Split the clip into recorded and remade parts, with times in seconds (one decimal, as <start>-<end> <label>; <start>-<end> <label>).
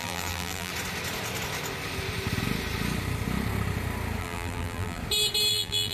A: 0.0-0.7 remade; 0.7-4.2 recorded; 4.2-5.0 remade; 5.0-5.5 recorded; 5.5-5.9 remade